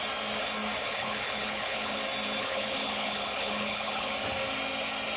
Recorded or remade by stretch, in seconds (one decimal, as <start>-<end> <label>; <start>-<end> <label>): 0.0-0.8 recorded; 0.8-2.0 remade; 2.0-2.4 recorded; 2.4-4.1 remade; 4.1-5.2 recorded